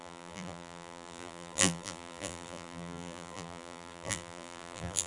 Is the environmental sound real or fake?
fake